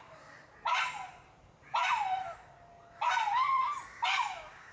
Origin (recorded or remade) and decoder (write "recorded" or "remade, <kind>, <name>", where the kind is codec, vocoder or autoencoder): recorded